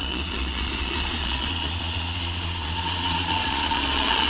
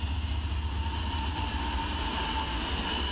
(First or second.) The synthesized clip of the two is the first